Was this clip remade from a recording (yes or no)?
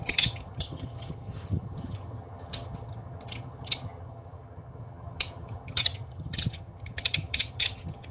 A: yes